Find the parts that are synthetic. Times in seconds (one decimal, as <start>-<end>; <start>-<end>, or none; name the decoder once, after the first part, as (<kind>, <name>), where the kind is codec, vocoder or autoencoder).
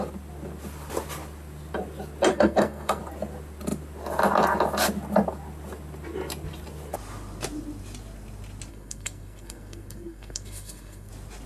2.3-3.0 (codec, SNAC); 8.7-11.1